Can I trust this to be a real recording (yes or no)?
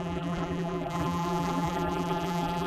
no